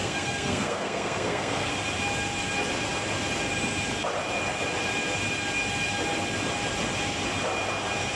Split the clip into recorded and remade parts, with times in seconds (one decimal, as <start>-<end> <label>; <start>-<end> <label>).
0.0-1.7 remade; 1.7-8.2 recorded